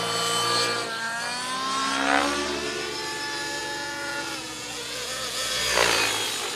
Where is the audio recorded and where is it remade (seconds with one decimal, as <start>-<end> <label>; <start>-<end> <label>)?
0.0-3.6 recorded; 3.6-5.6 remade; 5.6-6.6 recorded